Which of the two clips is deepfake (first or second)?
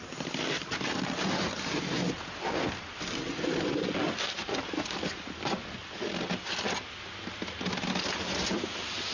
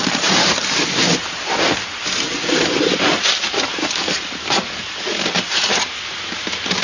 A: second